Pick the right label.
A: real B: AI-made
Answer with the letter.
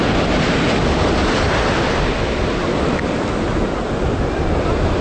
A